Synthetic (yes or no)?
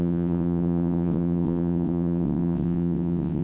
yes